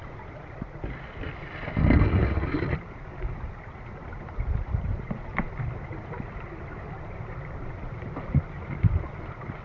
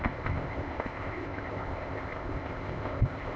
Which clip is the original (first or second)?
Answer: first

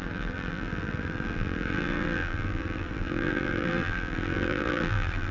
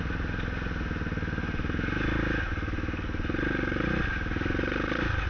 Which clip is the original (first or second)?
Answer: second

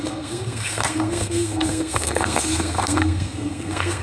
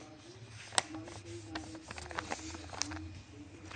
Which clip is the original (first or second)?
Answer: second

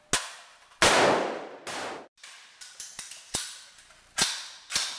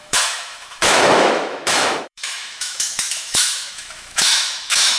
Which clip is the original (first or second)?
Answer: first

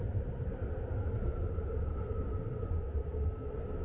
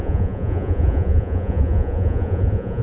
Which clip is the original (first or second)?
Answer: first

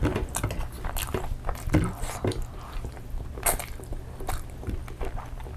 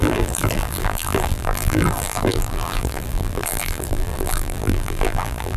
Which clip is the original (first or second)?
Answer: first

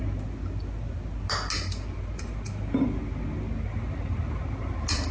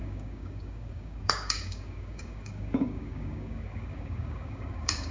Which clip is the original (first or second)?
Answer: first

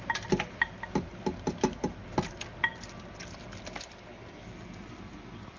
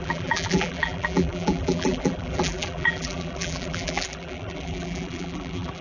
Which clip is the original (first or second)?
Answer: first